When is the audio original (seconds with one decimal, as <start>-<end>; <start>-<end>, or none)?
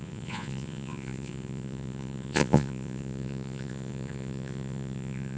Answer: none